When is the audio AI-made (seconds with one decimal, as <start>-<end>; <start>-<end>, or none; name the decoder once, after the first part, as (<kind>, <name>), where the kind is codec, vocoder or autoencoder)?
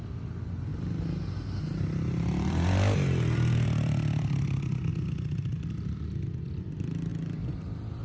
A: 0.0-0.7 (vocoder, BigVGAN v2); 1.6-4.9; 6.6-8.0